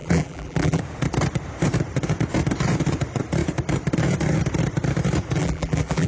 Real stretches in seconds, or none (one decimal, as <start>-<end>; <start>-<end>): 0.8-5.4